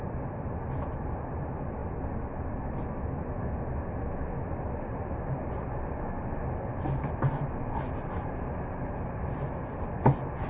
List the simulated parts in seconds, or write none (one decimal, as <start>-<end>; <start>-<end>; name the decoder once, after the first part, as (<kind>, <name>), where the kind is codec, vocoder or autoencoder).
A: 0.0-1.8 (vocoder, BigVGAN v2); 4.3-10.5